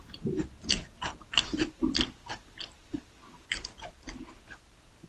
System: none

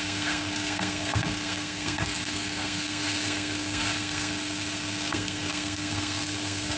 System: codec, SNAC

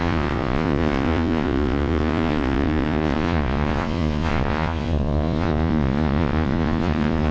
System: vocoder, Vocos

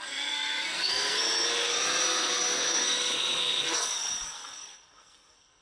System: codec, SNAC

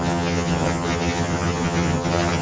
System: vocoder, HiFi-GAN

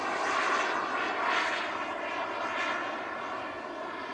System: none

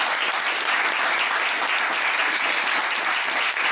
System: none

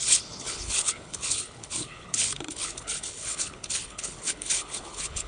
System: codec, HILCodec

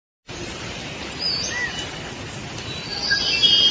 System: none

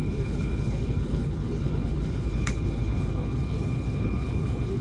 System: codec, HILCodec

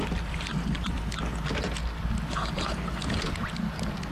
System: none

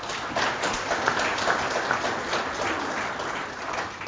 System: none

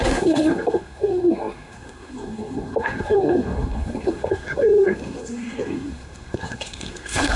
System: codec, SNAC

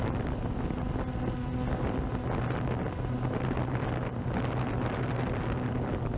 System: none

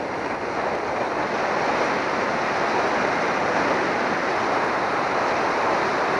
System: none